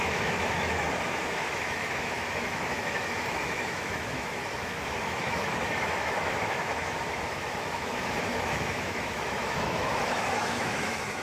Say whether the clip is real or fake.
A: fake